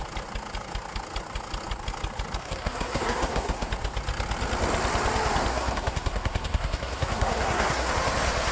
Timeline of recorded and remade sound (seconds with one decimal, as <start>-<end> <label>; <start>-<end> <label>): 0.0-2.4 recorded; 2.4-3.7 remade; 3.7-5.5 recorded; 5.5-7.9 remade; 7.9-8.5 recorded